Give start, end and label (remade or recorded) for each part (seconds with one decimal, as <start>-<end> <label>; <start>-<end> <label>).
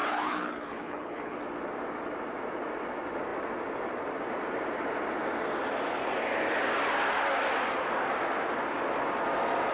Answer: 0.0-1.4 remade; 1.4-9.7 recorded